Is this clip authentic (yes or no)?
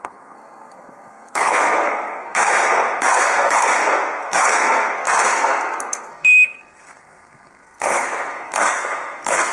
no